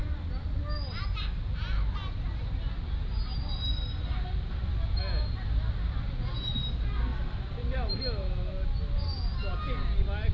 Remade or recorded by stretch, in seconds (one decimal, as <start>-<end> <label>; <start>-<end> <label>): 0.0-0.6 remade; 0.6-7.1 recorded; 7.1-8.0 remade; 8.0-10.3 recorded